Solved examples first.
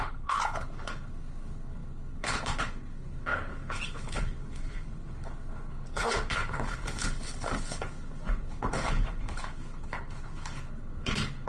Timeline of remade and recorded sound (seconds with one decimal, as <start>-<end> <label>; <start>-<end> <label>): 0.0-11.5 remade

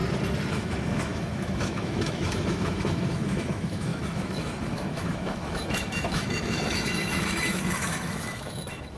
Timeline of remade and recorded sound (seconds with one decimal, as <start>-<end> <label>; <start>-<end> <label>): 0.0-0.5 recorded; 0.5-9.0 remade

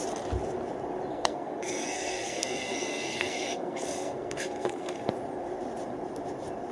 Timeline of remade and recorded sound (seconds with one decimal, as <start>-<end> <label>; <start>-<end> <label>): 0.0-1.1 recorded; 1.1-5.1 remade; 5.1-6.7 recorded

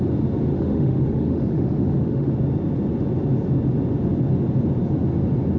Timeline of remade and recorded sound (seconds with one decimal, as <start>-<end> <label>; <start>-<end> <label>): 0.0-0.5 recorded; 0.5-2.3 remade; 2.3-5.6 recorded

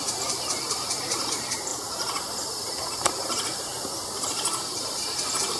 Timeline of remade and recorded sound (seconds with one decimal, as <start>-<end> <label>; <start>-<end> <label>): 0.0-1.7 remade; 1.7-3.0 recorded; 3.0-3.7 remade; 3.7-4.5 recorded; 4.5-5.6 remade

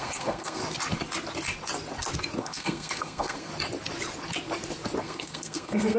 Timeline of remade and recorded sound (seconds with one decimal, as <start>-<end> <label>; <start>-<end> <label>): 0.0-0.6 remade; 0.6-2.4 recorded; 2.4-3.5 remade; 3.5-5.0 recorded; 5.0-6.0 remade

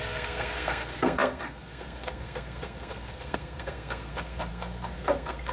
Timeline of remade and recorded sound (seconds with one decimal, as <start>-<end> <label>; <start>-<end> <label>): 0.0-5.5 remade

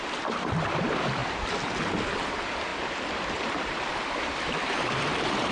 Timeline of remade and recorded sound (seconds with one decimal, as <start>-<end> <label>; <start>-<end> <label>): 0.0-1.2 remade; 1.2-2.3 recorded; 2.3-5.5 remade